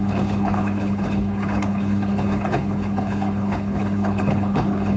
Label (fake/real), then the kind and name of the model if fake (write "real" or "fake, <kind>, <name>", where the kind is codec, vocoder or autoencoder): fake, codec, HILCodec